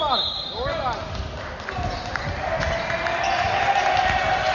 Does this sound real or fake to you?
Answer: real